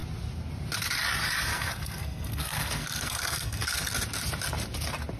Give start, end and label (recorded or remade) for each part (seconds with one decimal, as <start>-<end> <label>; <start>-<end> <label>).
0.0-1.5 recorded; 1.5-3.9 remade; 3.9-5.2 recorded